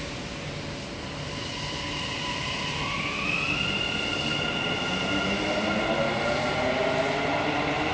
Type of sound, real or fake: real